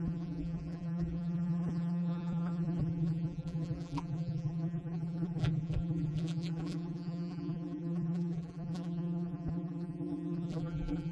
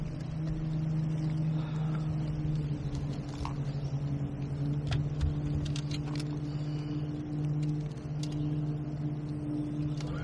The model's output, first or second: first